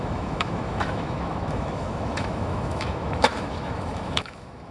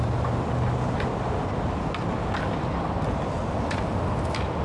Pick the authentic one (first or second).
second